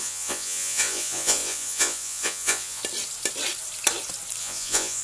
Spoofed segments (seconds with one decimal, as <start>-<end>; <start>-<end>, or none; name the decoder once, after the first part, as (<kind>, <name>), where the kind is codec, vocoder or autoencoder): 0.0-2.8 (vocoder, Vocos); 4.4-5.0